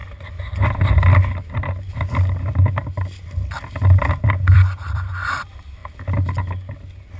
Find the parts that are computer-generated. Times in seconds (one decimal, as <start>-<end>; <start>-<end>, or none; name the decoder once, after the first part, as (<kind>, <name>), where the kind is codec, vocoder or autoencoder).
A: 3.7-5.8 (vocoder, BigVGAN v2)